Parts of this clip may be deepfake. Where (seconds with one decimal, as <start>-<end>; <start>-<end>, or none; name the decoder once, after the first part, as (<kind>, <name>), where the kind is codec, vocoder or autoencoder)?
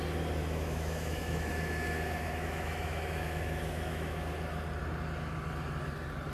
0.4-4.2 (autoencoder, DAC-VAE)